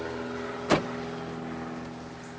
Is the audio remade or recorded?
recorded